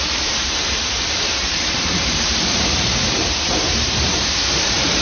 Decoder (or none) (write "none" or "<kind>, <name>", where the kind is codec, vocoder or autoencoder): vocoder, BigVGAN v2